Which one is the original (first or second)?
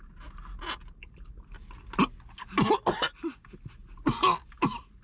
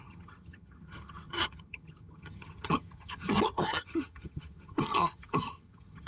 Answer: first